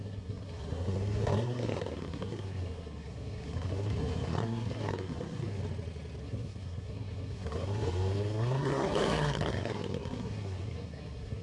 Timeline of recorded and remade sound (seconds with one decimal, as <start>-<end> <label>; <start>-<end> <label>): 0.0-5.6 remade; 5.6-6.2 recorded; 6.2-11.4 remade